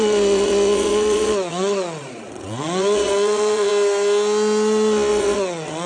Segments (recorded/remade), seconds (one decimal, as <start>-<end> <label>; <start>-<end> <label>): 0.0-3.7 remade; 3.7-5.1 recorded; 5.1-5.9 remade